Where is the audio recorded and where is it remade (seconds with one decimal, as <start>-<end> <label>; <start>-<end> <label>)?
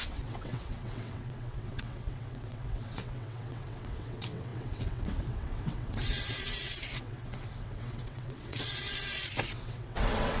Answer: 0.0-10.4 remade